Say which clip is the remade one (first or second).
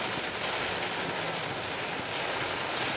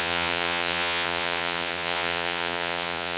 second